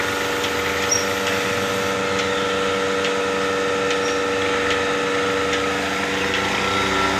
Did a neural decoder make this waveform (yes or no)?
no